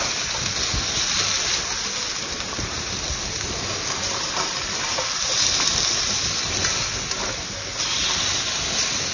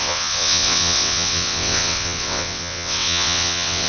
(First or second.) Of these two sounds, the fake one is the second